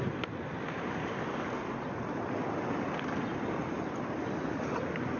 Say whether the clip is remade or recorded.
recorded